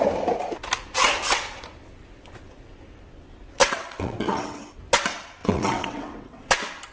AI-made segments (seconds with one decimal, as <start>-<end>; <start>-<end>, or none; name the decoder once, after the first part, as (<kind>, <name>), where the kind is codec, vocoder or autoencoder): 3.6-4.6 (vocoder, WaveNeXt); 5.4-6.5